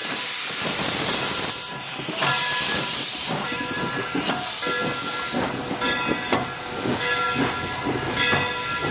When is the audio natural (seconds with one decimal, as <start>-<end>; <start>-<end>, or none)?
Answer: 4.3-8.9